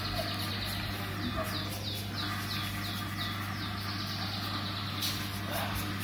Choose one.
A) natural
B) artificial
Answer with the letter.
A